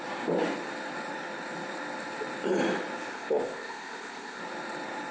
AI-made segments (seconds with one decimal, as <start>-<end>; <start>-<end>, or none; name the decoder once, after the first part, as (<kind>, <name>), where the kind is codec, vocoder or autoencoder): 3.1-4.4 (codec, ZipCodec)